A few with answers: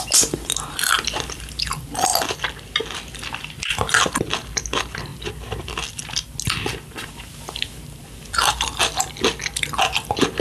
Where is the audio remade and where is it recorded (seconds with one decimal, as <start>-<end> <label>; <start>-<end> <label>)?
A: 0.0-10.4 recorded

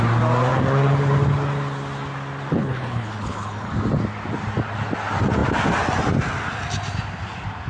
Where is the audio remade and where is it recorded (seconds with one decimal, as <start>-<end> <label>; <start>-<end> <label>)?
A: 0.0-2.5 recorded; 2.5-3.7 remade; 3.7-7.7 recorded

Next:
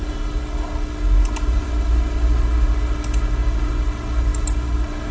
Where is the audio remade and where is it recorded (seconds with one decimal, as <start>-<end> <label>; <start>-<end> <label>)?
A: 0.0-5.1 recorded

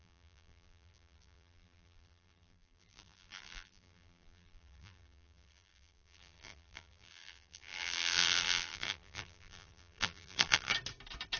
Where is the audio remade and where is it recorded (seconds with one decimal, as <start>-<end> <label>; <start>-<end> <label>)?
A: 0.0-10.7 remade; 10.7-11.4 recorded